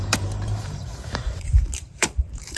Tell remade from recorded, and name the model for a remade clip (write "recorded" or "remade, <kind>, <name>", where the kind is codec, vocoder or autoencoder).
remade, vocoder, BigVGAN v2